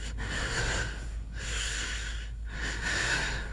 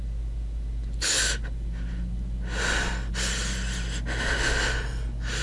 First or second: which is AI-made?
first